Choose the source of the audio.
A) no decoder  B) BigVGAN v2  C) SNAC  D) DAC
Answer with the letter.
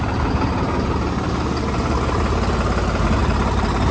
A